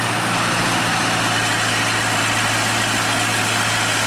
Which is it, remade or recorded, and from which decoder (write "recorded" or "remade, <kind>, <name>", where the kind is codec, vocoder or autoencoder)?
recorded